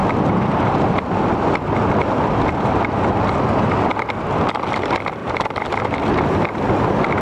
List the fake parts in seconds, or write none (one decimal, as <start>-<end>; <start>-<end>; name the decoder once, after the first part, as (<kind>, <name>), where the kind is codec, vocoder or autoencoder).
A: 0.0-1.4 (vocoder, BigVGAN v2); 5.2-5.7